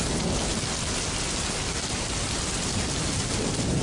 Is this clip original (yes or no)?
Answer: yes